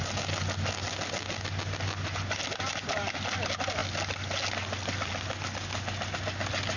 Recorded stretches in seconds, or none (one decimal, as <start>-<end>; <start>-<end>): 0.0-6.8